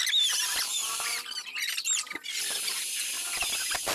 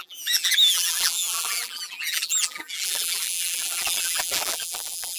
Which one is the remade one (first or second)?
second